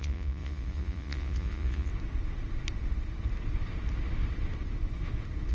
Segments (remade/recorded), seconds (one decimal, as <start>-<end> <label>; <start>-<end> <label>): 0.0-1.9 remade; 1.9-5.5 recorded